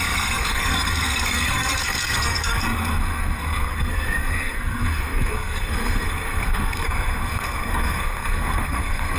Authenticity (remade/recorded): remade